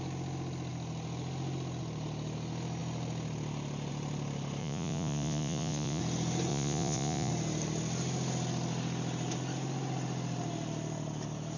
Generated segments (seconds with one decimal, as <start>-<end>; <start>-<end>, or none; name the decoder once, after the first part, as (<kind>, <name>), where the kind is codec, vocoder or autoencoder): 4.6-6.0 (vocoder, Vocos); 6.5-7.3